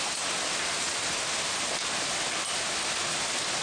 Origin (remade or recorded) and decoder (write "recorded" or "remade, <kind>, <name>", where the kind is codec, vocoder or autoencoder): remade, vocoder, BigVGAN v2